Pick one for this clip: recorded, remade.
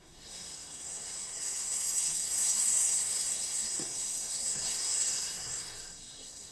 remade